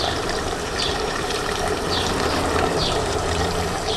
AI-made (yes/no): yes